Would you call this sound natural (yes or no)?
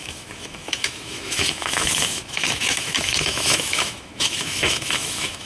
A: no